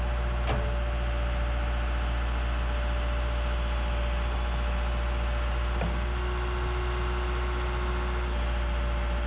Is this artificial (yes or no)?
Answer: no